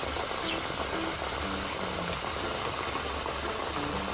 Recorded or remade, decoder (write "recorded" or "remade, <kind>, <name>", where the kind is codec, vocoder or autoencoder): recorded